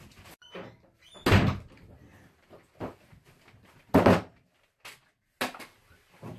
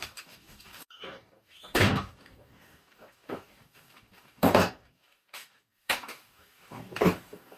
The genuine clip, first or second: first